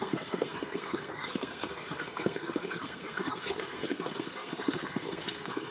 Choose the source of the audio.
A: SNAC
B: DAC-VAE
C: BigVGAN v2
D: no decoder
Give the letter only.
A